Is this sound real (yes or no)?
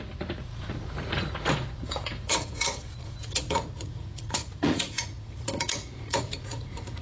no